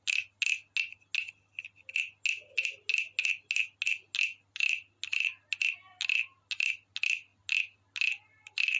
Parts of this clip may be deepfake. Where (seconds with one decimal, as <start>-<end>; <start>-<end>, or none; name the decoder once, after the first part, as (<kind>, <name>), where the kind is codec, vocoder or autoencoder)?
none